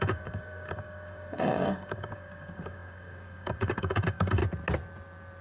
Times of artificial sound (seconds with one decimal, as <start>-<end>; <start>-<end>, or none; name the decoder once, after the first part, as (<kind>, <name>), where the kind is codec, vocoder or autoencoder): 0.0-4.4 (codec, DAC)

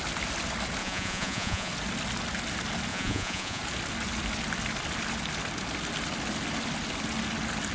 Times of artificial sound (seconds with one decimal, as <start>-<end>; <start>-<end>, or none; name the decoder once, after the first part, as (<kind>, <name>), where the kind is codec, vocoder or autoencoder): 0.8-1.7 (vocoder, Vocos); 2.9-3.6

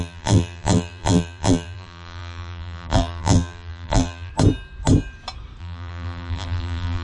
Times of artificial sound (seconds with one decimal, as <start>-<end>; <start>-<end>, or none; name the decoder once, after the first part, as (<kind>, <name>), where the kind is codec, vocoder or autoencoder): 0.0-4.3 (vocoder, BigVGAN v2); 5.6-7.0

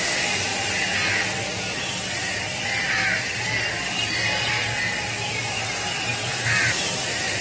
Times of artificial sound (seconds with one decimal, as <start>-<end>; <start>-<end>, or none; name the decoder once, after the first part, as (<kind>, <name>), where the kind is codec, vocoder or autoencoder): 0.0-0.5 (vocoder, BigVGAN v2); 4.5-7.4

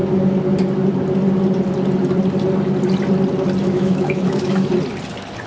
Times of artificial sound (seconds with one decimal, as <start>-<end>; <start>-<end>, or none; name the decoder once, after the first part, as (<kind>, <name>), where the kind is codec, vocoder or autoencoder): 3.6-4.7 (autoencoder, DAC-VAE)